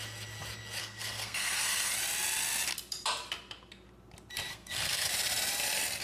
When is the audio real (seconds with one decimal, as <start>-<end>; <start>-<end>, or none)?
0.0-0.8; 1.9-4.5; 5.1-6.0

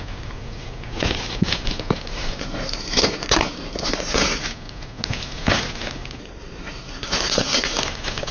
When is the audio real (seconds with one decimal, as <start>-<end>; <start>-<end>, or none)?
0.0-2.4; 4.4-6.2; 7.8-8.3

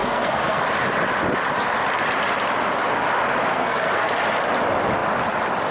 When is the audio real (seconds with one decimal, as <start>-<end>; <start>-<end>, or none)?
0.6-3.5; 4.1-5.7

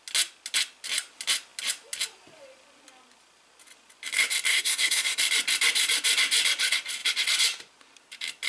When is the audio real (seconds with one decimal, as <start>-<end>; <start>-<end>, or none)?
0.0-4.5; 5.2-8.5

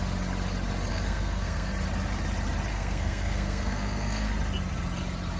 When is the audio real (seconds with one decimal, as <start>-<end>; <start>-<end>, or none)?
0.0-0.9; 1.7-2.7; 4.3-5.4

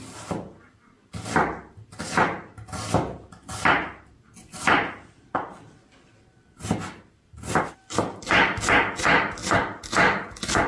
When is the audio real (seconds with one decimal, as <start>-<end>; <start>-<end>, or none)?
0.0-10.7